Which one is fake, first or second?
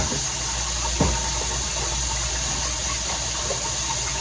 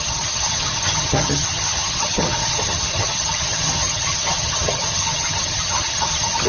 second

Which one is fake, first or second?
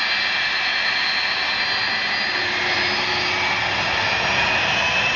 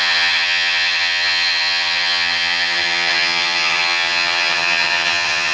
second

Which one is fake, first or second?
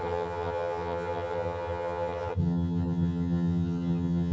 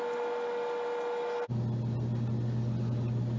first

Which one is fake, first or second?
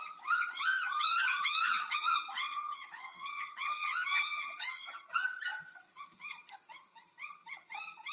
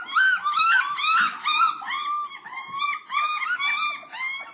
first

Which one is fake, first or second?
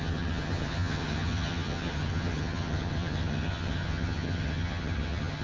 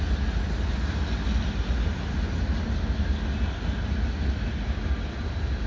first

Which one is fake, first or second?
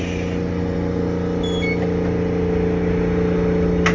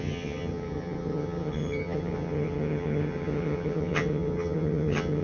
second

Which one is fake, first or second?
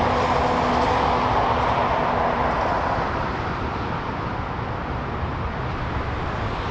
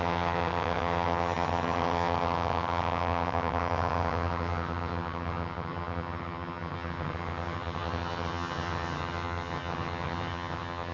second